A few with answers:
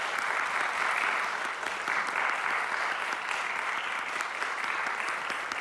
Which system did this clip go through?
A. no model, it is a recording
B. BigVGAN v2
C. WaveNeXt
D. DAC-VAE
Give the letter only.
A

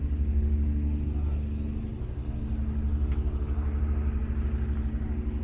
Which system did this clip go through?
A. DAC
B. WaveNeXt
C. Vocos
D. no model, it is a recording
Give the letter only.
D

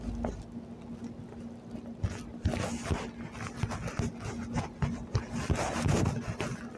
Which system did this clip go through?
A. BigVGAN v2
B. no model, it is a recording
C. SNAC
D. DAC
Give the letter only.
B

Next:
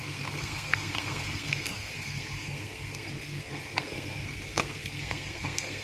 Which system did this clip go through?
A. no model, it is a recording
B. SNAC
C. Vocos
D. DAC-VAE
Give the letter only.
B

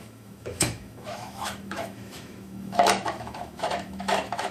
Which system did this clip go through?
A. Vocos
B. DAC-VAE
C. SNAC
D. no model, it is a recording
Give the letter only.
B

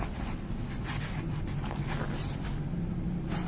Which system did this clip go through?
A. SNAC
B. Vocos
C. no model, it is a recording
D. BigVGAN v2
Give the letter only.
C